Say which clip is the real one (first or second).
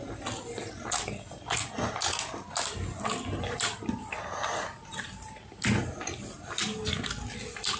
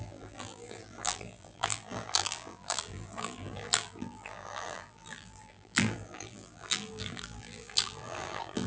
first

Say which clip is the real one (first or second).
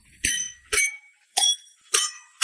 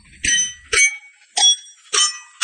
second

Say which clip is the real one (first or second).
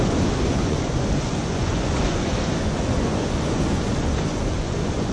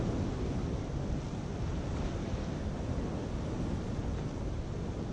second